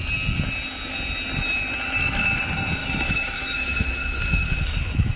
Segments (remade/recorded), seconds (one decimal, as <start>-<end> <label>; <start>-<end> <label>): 0.0-2.8 recorded; 2.8-5.2 remade